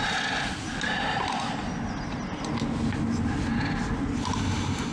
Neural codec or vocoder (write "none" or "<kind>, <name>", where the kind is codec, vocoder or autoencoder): none